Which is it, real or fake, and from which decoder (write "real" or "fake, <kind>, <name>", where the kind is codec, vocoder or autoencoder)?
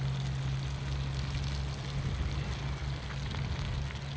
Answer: real